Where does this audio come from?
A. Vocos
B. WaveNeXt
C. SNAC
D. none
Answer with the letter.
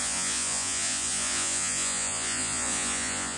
A